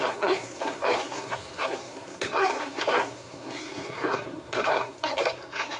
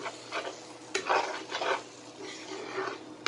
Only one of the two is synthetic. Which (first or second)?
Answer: first